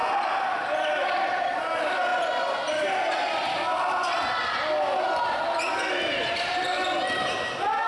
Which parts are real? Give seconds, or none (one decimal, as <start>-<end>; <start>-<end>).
1.6-7.9